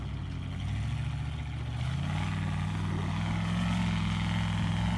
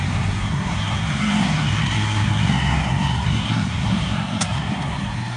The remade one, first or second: second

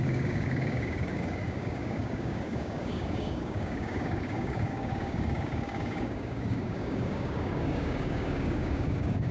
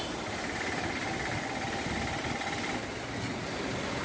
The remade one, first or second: first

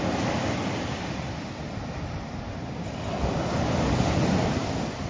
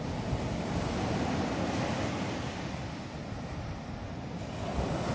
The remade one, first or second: first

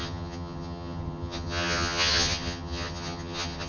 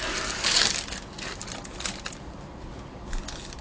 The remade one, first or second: first